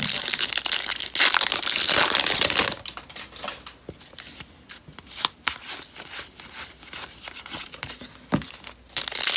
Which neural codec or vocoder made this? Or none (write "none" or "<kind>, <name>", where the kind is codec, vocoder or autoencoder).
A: none